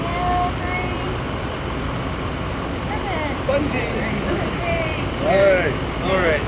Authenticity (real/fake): real